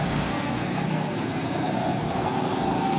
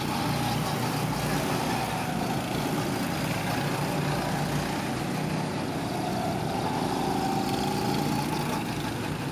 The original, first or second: second